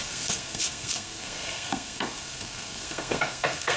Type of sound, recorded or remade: remade